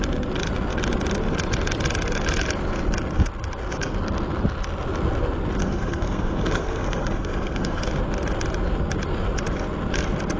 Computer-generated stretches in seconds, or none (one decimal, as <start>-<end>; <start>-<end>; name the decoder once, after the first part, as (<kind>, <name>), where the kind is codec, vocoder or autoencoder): 5.6-7.9 (codec, SNAC)